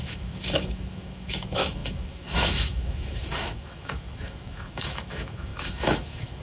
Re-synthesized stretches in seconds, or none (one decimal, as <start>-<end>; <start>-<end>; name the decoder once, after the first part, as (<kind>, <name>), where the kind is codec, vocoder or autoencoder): 0.0-6.4 (autoencoder, DAC-VAE)